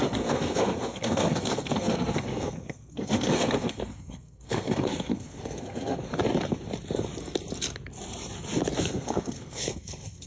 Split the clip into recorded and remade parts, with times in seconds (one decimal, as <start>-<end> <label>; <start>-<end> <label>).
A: 0.0-6.1 remade; 6.1-8.8 recorded; 8.8-10.3 remade